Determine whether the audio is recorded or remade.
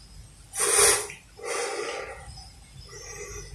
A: recorded